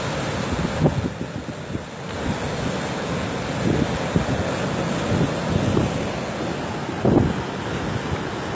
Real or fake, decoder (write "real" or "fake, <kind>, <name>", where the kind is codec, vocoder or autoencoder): real